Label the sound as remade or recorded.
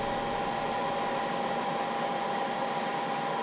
recorded